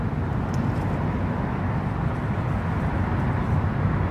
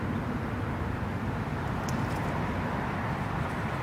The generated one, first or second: second